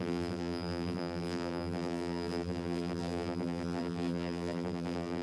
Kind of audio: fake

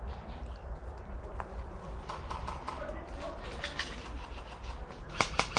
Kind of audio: real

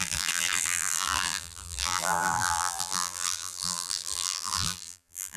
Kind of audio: fake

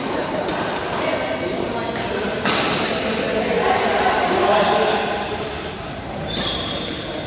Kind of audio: fake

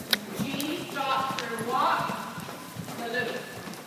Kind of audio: fake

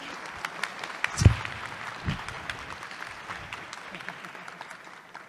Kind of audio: real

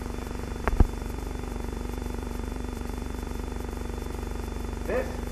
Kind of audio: fake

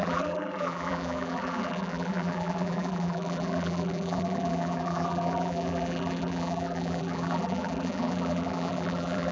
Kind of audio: fake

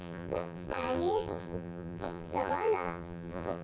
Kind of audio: fake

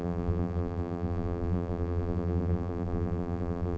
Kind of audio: fake